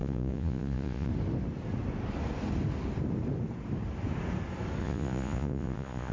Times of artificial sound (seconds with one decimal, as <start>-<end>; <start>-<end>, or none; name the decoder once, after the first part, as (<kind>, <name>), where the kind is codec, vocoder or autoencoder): 0.0-1.1 (vocoder, Vocos); 4.8-6.1